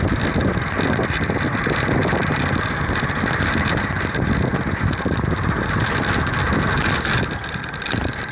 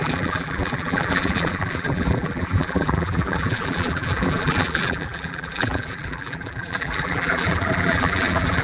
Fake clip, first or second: second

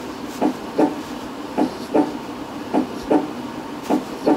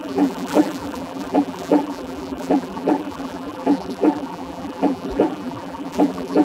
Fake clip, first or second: second